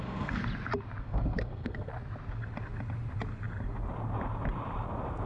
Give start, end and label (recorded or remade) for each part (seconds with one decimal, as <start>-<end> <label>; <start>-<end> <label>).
0.0-0.4 remade; 0.4-1.0 recorded; 1.0-1.9 remade; 1.9-5.3 recorded